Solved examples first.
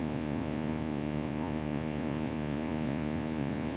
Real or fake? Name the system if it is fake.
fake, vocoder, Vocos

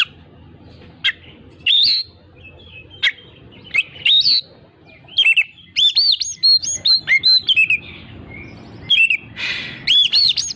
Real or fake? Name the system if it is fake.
real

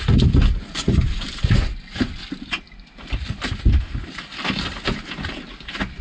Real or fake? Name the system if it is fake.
real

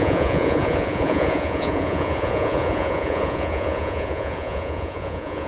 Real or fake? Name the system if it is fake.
fake, vocoder, Vocos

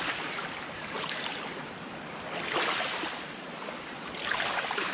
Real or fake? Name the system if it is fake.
real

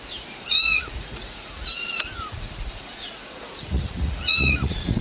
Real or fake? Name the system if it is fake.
fake, vocoder, Vocos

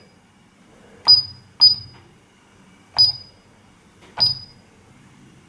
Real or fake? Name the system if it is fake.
real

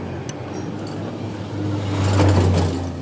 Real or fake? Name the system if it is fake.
real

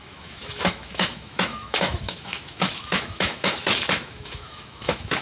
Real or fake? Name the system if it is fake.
fake, autoencoder, DAC-VAE